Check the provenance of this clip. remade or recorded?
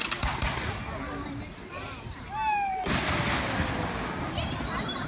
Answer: recorded